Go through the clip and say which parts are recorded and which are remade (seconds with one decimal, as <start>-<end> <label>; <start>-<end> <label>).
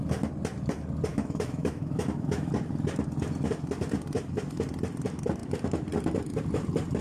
0.0-1.1 recorded; 1.1-2.5 remade; 2.5-7.0 recorded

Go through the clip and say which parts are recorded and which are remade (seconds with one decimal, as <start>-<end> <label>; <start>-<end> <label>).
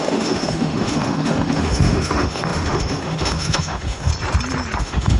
0.0-4.1 remade; 4.1-4.8 recorded; 4.8-5.2 remade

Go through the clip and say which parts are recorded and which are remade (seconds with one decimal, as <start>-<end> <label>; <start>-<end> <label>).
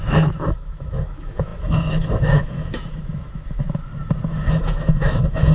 0.0-3.8 remade; 3.8-4.5 recorded; 4.5-5.5 remade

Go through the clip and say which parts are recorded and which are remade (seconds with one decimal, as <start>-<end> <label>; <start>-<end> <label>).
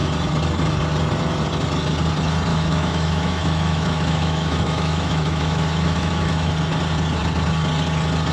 0.0-2.5 recorded; 2.5-6.5 remade; 6.5-8.3 recorded